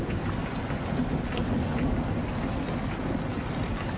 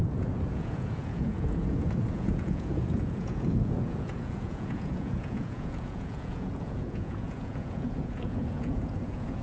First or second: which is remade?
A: second